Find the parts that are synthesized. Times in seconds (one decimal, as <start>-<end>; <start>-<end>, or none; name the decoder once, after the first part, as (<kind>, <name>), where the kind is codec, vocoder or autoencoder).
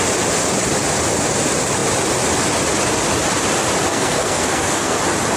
3.9-5.0 (codec, SNAC)